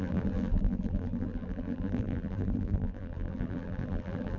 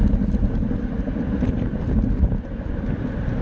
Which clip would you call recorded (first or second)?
second